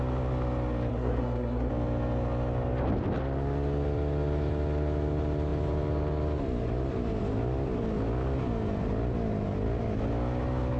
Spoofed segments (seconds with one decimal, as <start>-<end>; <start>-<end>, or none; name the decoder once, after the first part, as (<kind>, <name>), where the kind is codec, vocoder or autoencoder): 0.9-1.7 (codec, SNAC)